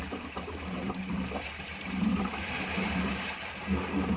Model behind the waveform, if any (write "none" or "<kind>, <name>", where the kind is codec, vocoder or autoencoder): vocoder, BigVGAN v2